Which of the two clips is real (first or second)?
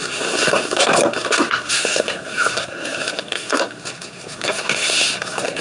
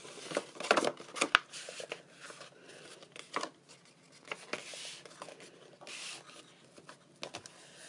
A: second